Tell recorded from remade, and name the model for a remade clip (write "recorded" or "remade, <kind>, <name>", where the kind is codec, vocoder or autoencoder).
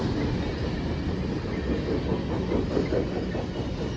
recorded